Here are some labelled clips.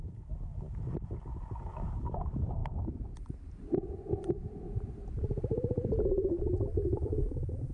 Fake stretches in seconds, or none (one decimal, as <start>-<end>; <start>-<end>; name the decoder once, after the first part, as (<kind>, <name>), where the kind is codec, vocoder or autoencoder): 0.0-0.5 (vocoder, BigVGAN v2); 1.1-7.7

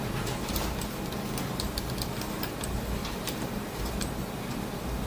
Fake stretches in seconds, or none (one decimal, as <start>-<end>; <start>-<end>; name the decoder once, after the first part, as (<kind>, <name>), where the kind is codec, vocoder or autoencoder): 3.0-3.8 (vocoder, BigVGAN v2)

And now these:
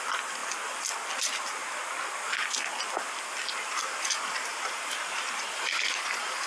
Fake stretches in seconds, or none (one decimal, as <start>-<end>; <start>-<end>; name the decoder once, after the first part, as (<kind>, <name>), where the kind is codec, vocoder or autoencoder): 0.0-0.4 (vocoder, BigVGAN v2); 1.1-1.6; 3.7-6.5